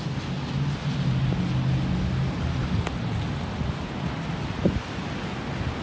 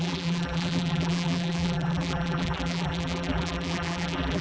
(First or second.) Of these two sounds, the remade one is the second